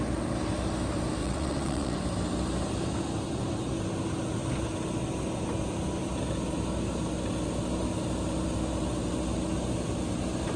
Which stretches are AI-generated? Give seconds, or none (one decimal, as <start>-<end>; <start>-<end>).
1.2-2.0